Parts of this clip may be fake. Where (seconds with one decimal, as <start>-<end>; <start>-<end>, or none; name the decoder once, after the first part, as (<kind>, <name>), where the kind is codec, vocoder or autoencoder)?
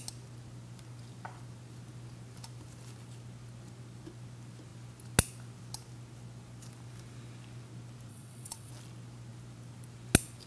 8.1-8.7 (vocoder, WaveNeXt)